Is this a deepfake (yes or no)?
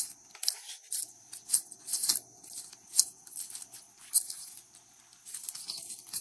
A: no